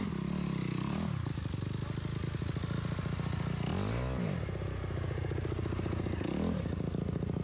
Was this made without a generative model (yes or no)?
yes